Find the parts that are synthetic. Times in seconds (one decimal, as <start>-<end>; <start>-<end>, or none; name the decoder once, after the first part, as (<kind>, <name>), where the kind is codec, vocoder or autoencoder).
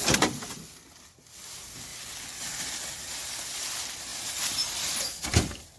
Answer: 4.1-5.8 (vocoder, BigVGAN v2)